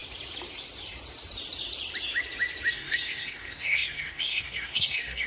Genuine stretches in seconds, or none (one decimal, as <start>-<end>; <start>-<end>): 0.0-2.7